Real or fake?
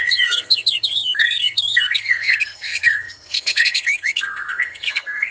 fake